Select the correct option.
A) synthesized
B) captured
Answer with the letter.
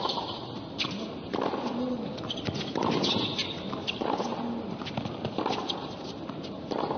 B